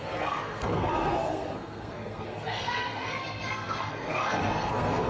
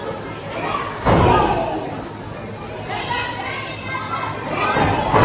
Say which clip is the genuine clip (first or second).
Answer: second